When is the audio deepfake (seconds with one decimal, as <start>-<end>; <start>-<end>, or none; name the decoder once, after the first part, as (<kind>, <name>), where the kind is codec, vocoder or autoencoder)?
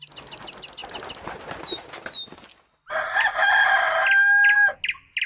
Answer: none